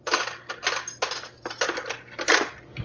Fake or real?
real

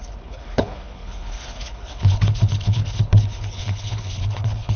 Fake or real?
fake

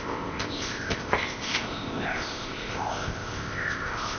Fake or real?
fake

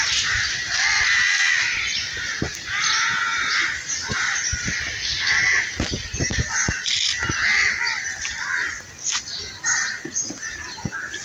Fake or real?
real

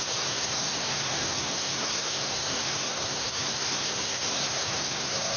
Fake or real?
fake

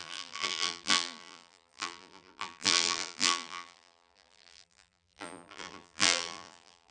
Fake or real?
fake